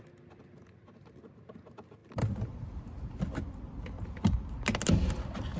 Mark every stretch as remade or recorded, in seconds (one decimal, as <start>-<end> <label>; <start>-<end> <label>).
0.0-5.6 recorded